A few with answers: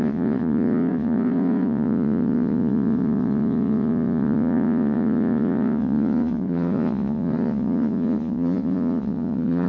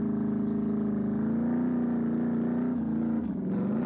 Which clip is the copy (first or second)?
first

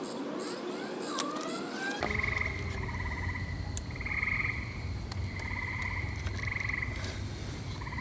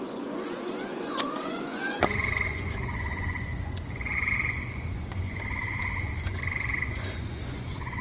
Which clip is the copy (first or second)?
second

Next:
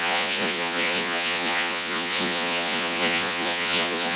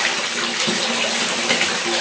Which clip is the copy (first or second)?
first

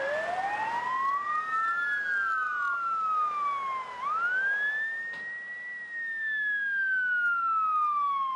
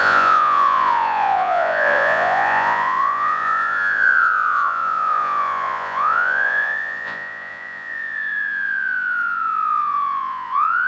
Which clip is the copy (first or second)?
second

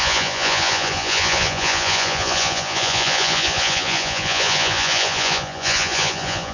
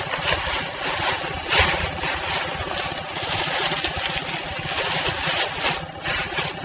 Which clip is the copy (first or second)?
first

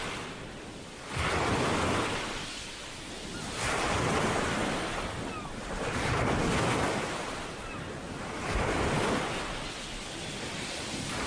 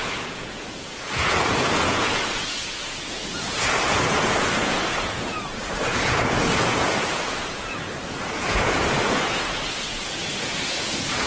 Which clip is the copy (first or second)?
second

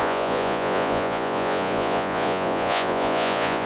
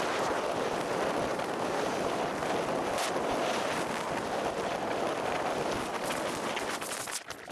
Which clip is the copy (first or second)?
first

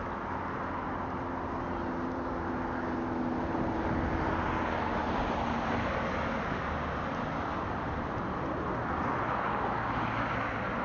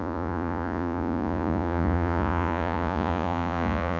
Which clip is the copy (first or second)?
second